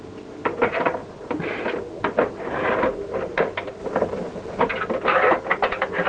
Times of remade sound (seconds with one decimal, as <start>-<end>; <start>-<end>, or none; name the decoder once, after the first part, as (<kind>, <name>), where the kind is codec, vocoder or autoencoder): 3.8-4.6 (vocoder, BigVGAN v2)